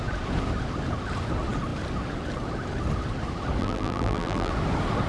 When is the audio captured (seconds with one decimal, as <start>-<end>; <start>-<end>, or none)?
0.0-3.6; 4.5-5.1